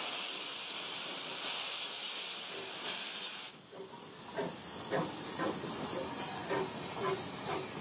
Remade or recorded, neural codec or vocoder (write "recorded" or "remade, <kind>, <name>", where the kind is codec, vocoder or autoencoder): recorded